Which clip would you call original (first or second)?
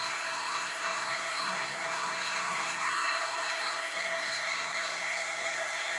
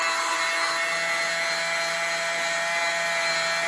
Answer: second